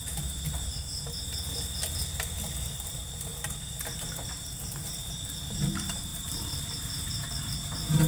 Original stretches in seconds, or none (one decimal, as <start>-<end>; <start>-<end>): 0.9-2.7; 3.3-4.7